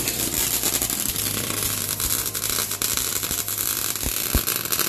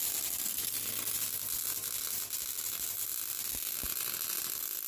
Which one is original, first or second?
second